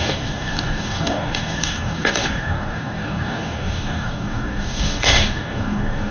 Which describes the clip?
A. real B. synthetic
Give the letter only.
B